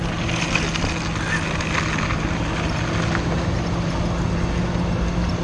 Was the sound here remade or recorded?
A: recorded